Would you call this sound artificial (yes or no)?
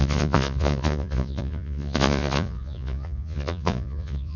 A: yes